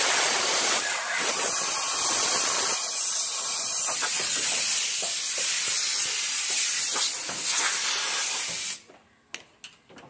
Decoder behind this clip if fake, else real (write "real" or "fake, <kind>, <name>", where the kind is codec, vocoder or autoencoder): real